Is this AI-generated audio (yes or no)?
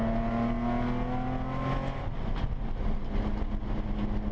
no